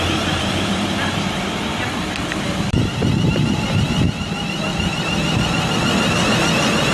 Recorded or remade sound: remade